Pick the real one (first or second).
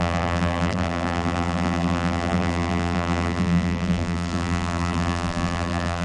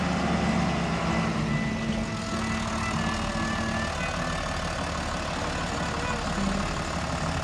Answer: second